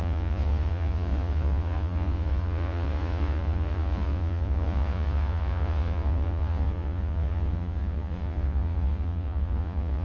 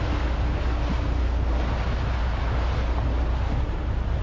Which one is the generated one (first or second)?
first